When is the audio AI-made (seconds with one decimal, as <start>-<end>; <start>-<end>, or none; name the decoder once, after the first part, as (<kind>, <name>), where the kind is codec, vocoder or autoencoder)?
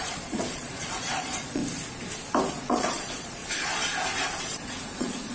0.0-1.6 (vocoder, Vocos); 2.5-3.4; 4.4-5.3